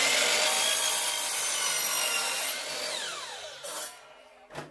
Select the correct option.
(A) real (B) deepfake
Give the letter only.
A